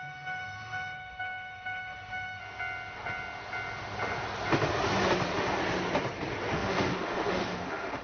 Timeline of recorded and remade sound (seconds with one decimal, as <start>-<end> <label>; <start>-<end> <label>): 0.0-2.4 remade; 2.4-6.5 recorded; 6.5-8.0 remade